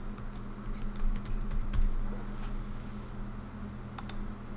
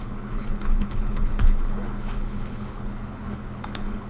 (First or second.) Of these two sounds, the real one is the first